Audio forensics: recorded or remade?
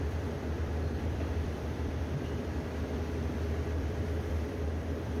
remade